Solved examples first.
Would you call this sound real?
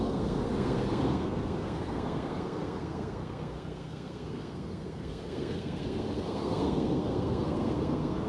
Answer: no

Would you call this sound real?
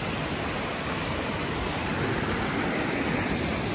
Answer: yes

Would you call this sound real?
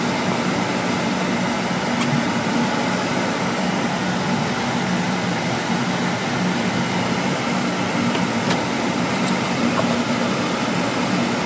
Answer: yes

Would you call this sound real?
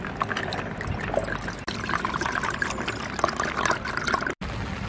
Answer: yes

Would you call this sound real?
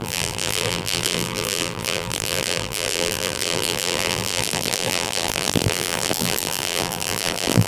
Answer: no